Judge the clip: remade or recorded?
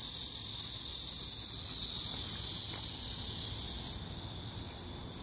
recorded